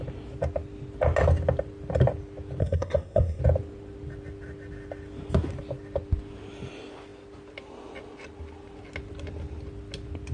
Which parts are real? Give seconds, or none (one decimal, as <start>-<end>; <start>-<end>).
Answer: 0.0-2.6; 3.4-10.3